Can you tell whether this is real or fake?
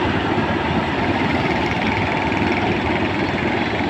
fake